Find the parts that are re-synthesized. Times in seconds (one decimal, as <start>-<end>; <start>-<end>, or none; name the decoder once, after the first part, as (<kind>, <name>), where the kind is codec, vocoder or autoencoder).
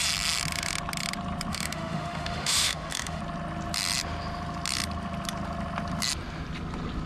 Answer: 1.5-3.2 (autoencoder, DAC-VAE)